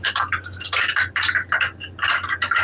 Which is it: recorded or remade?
recorded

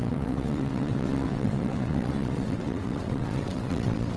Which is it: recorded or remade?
remade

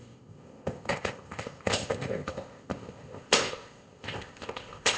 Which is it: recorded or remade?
remade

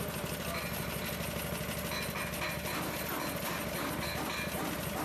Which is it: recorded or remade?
recorded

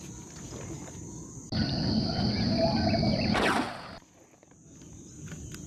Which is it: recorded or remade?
recorded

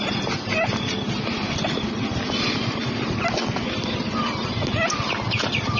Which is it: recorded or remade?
recorded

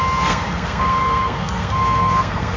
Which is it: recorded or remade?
remade